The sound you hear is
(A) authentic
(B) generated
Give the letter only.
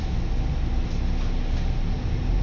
A